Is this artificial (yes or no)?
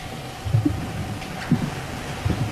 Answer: no